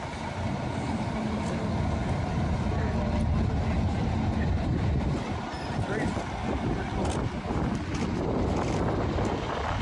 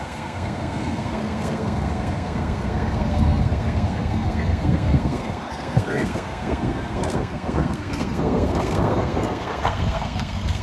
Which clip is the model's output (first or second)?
second